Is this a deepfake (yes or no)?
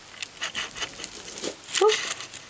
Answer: no